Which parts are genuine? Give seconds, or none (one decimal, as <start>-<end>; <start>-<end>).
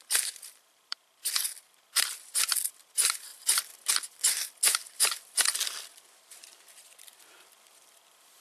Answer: 1.5-2.0